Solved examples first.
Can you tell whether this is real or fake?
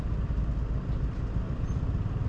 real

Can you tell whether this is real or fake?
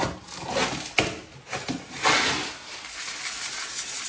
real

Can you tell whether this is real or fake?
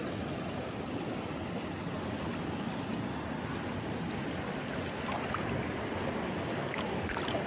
real